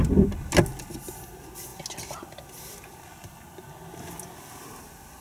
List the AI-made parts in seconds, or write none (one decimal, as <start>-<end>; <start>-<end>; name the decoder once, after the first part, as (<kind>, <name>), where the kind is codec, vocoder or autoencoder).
none